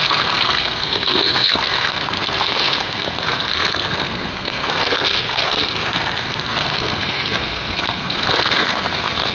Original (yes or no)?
no